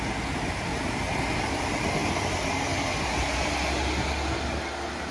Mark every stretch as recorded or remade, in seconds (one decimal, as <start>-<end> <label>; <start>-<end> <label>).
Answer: 0.0-5.1 recorded